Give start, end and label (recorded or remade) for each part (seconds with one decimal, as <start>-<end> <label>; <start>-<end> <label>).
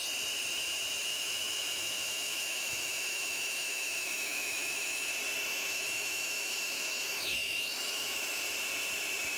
0.0-1.1 recorded; 1.1-5.1 remade; 5.1-5.5 recorded; 5.5-8.4 remade; 8.4-9.4 recorded